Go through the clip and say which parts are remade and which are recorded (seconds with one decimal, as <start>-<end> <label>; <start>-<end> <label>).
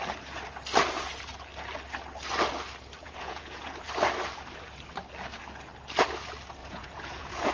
0.0-3.0 recorded; 3.0-3.9 remade; 3.9-6.6 recorded; 6.6-7.5 remade